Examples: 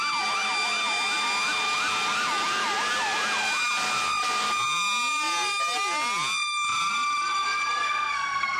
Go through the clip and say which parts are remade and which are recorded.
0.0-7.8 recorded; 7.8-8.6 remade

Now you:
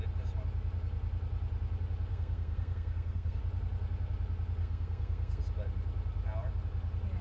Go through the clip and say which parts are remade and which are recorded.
0.0-2.1 recorded; 2.1-3.4 remade; 3.4-4.6 recorded; 4.6-5.4 remade; 5.4-7.2 recorded

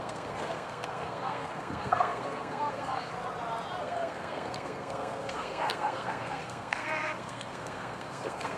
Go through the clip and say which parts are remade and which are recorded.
0.0-3.1 remade; 3.1-3.8 recorded; 3.8-8.6 remade

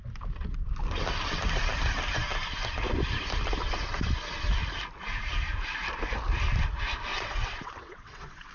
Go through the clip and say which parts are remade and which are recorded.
0.0-7.1 recorded; 7.1-8.5 remade

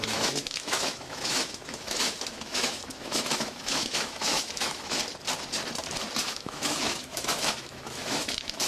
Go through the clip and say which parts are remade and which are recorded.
0.0-5.0 remade; 5.0-6.2 recorded; 6.2-8.7 remade

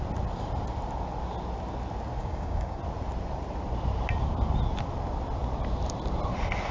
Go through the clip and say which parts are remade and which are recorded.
0.0-2.2 recorded; 2.2-2.8 remade; 2.8-6.7 recorded

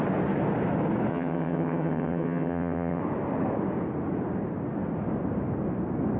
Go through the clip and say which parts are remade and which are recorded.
0.0-1.1 recorded; 1.1-3.0 remade; 3.0-6.2 recorded